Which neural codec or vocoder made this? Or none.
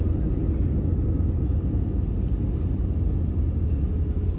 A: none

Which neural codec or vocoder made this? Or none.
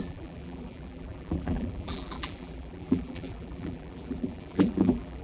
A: vocoder, BigVGAN v2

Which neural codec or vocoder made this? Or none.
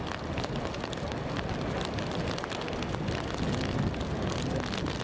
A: none